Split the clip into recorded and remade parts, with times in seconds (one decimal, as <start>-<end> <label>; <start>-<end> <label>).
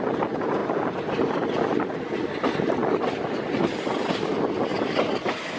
0.0-2.8 recorded; 2.8-3.4 remade; 3.4-4.7 recorded; 4.7-5.6 remade